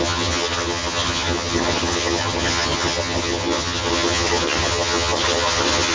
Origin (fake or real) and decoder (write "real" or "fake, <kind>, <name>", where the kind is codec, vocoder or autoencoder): fake, vocoder, HiFi-GAN